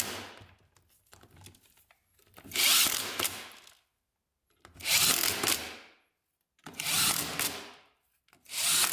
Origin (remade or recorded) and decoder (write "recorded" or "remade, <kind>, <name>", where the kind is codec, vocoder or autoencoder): recorded